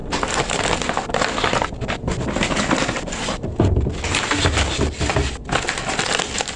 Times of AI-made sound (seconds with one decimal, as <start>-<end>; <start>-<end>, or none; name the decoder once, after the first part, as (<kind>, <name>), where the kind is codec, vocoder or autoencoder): 0.0-0.6 (vocoder, BigVGAN v2); 1.5-5.2